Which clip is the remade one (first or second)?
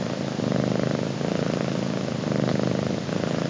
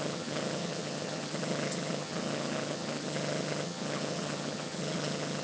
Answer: second